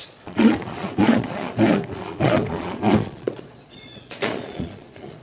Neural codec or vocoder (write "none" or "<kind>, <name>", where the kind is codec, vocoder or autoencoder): vocoder, Vocos